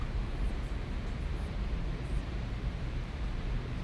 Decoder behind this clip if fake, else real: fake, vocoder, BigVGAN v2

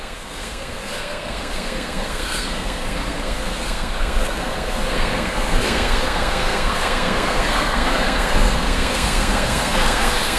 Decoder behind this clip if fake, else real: fake, codec, SNAC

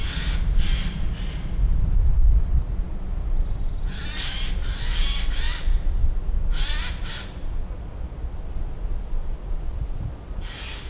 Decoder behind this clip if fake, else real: real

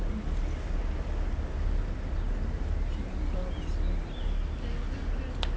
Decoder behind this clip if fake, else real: real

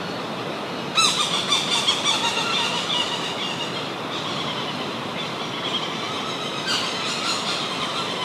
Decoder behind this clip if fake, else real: real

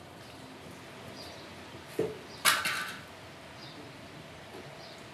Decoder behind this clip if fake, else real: real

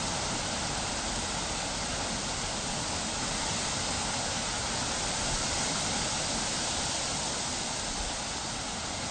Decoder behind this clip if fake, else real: real